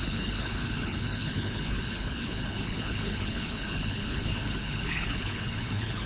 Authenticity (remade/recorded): remade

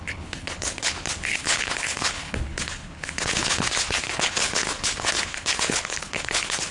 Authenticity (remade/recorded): remade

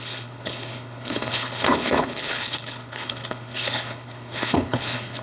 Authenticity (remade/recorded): remade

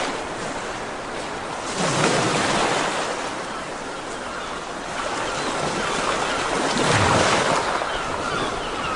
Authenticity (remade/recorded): recorded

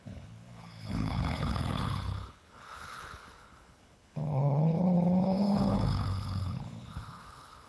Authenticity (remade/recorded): remade